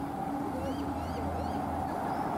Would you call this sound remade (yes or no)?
no